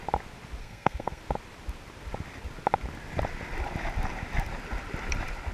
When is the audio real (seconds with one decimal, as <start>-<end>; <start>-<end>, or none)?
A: 0.0-0.6; 1.2-5.5